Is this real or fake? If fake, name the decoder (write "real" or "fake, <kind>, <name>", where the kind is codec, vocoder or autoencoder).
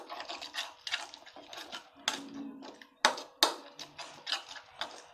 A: real